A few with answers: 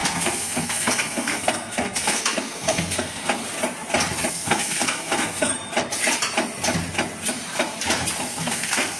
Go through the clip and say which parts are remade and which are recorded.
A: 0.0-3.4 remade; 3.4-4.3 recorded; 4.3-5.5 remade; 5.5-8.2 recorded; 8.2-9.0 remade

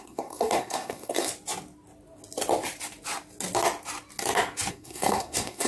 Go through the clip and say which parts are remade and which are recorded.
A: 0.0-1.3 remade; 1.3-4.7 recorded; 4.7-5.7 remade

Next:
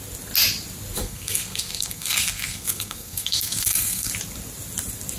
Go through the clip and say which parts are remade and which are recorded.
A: 0.0-1.0 recorded; 1.0-4.1 remade; 4.1-5.2 recorded

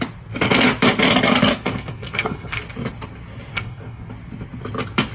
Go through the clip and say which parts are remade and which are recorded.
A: 0.0-1.5 recorded; 1.5-2.6 remade; 2.6-3.5 recorded; 3.5-4.1 remade; 4.1-5.1 recorded